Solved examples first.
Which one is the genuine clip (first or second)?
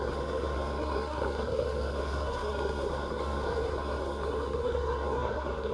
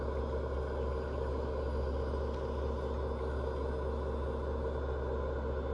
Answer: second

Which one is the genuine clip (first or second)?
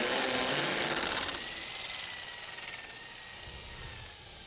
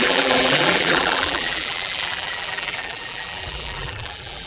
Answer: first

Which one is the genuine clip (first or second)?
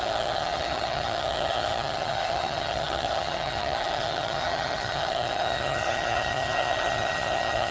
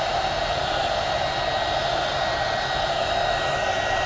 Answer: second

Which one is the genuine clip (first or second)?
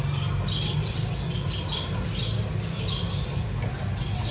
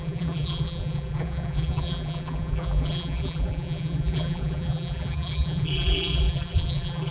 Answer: first